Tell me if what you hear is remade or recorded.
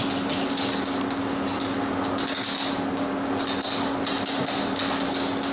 recorded